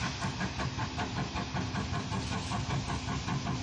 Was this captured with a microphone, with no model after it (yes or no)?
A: yes